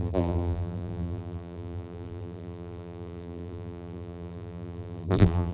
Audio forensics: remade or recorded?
remade